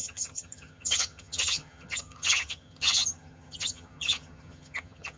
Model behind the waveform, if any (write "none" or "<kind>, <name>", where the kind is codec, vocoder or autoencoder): vocoder, HiFi-GAN